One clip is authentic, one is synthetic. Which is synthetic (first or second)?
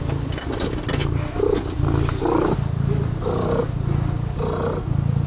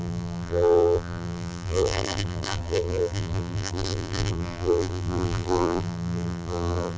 second